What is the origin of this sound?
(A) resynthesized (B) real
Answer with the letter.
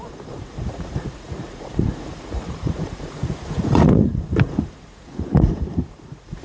A